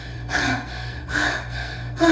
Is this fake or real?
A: fake